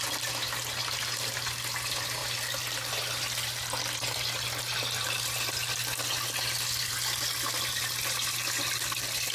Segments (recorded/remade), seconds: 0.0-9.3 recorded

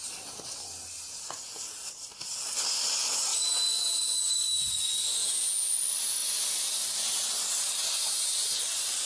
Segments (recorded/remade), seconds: 0.0-3.3 recorded; 3.3-4.3 remade; 4.3-5.2 recorded; 5.2-5.7 remade; 5.7-9.1 recorded

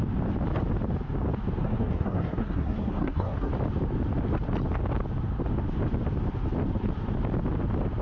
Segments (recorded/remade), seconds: 0.0-1.6 recorded; 1.6-3.5 remade; 3.5-8.0 recorded

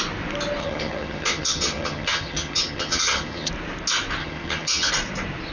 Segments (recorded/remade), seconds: 0.0-0.6 recorded; 0.6-3.5 remade; 3.5-4.2 recorded; 4.2-4.9 remade; 4.9-5.5 recorded